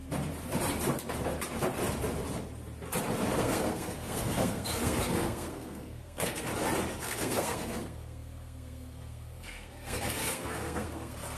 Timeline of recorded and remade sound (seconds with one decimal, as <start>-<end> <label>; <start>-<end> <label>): 0.0-3.4 recorded; 3.4-6.5 remade; 6.5-7.0 recorded; 7.0-11.4 remade